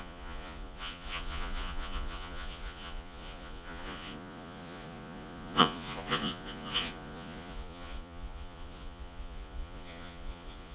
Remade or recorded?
remade